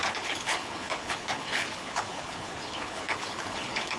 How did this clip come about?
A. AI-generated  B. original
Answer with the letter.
A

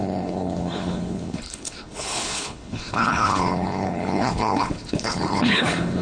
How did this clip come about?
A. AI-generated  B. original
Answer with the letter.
A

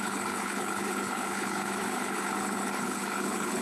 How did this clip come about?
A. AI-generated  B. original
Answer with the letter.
A